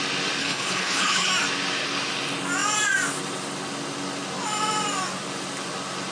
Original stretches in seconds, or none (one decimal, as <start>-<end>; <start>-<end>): 0.0-0.4; 1.3-6.1